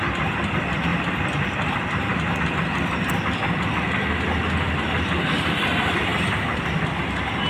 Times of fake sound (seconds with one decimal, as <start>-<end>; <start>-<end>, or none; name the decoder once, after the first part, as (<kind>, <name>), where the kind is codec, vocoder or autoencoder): none